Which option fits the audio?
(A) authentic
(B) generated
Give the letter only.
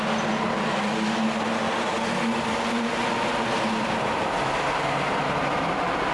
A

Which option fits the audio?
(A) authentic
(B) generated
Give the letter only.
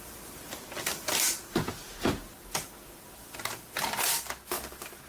A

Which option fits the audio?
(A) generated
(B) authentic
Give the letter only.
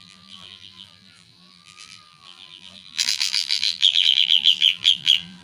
A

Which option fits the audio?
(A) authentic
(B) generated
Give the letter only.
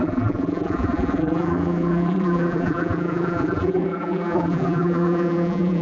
B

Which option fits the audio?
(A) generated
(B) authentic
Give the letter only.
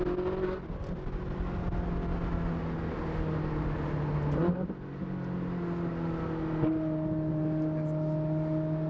B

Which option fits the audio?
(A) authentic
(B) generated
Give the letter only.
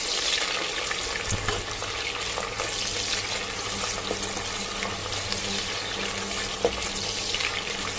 A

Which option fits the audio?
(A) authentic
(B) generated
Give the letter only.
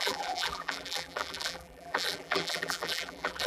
B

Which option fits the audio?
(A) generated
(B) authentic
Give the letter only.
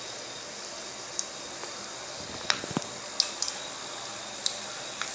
B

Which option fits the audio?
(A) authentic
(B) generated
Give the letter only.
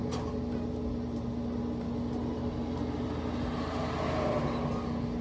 A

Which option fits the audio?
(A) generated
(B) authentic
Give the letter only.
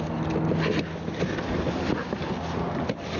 B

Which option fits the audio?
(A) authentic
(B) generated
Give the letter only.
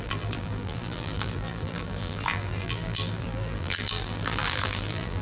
B